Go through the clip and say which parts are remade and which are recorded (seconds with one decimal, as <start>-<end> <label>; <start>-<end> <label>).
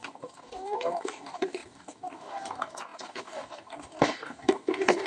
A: 0.0-5.1 remade